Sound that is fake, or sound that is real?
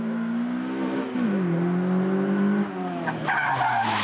real